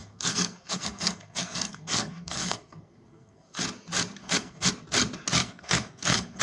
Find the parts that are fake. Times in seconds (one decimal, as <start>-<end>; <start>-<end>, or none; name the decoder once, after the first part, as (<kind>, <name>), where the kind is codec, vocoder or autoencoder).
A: 0.0-3.6 (codec, SNAC); 4.2-4.7; 5.4-6.4